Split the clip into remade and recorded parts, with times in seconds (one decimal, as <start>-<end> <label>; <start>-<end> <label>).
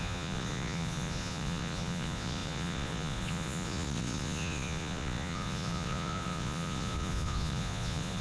0.0-8.2 remade